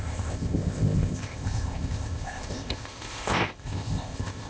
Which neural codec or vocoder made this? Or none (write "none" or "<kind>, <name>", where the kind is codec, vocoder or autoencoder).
codec, ZipCodec